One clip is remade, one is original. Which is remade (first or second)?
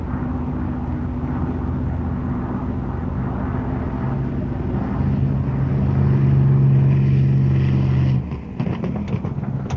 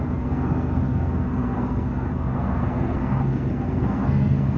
second